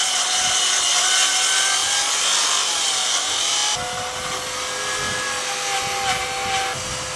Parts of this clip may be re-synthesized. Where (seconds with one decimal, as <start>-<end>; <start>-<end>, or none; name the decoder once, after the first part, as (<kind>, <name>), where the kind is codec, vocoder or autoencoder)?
none